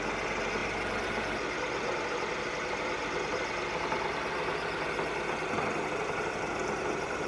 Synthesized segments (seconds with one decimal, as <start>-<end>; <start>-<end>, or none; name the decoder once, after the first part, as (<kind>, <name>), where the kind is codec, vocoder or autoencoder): none